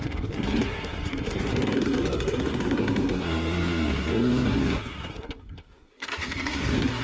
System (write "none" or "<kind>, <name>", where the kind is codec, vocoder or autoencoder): codec, SNAC